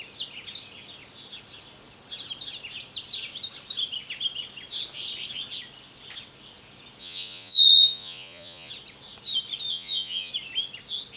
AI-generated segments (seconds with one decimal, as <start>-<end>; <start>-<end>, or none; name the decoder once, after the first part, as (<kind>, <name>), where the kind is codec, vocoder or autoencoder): 7.0-8.7 (vocoder, Vocos); 9.7-10.3